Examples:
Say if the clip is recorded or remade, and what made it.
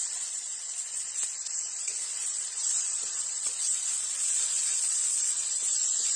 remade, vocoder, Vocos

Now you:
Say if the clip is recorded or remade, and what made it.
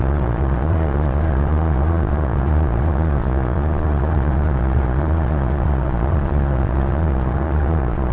remade, vocoder, Vocos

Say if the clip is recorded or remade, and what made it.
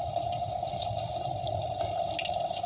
recorded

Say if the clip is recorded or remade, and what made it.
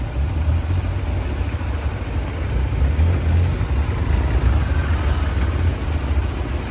recorded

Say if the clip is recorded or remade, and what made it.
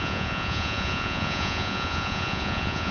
remade, vocoder, Vocos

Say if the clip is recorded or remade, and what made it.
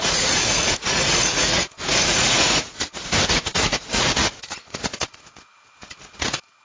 remade, vocoder, Vocos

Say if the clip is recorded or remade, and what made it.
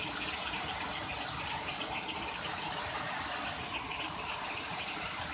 recorded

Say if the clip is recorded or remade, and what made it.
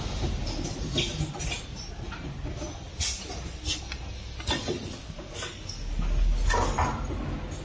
recorded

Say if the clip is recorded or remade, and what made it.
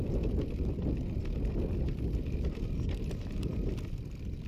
recorded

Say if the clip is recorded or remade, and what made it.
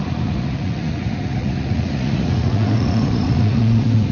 remade, vocoder, Vocos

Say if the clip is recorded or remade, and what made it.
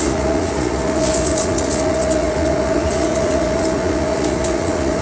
remade, vocoder, Vocos